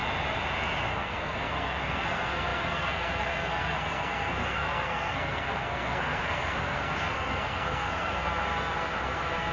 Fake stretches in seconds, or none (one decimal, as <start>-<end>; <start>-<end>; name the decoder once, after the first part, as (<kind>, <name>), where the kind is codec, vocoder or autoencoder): 0.9-9.5 (codec, SNAC)